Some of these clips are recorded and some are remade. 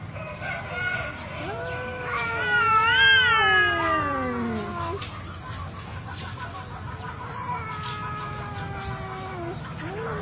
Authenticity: recorded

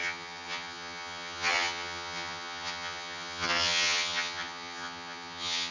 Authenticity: remade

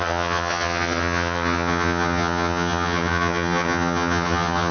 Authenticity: remade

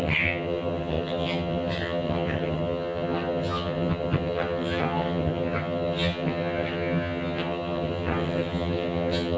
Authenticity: remade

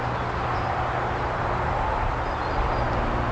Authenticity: recorded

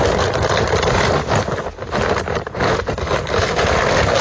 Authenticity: recorded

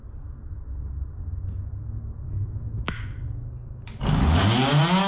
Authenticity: recorded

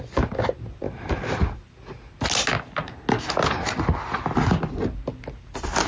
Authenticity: recorded